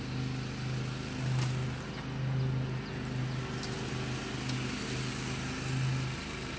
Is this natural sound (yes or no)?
yes